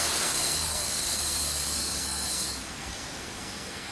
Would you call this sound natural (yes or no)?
no